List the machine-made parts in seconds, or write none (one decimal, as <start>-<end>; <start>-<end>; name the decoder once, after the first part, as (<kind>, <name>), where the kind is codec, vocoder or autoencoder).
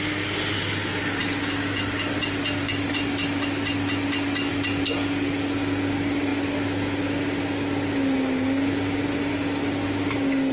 none